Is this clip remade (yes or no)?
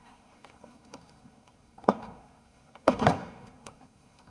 yes